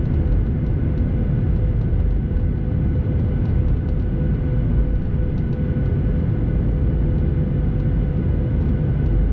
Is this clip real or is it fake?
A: real